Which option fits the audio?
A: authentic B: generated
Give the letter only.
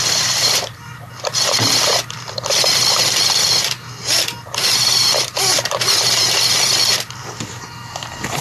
B